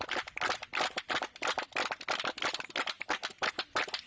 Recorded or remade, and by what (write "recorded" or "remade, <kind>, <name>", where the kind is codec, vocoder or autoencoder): recorded